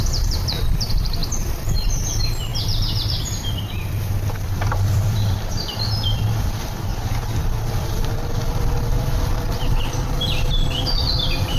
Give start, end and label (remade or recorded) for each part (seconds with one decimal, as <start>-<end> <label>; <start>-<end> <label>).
0.0-1.2 remade; 1.2-1.9 recorded; 1.9-6.9 remade; 6.9-7.6 recorded; 7.6-9.3 remade; 9.3-10.0 recorded; 10.0-11.6 remade